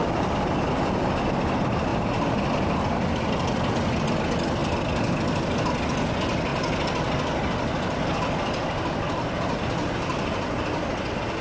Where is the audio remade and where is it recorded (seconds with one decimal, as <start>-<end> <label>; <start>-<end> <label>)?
0.0-1.3 remade; 1.3-1.9 recorded; 1.9-3.7 remade; 3.7-4.6 recorded; 4.6-5.4 remade; 5.4-11.4 recorded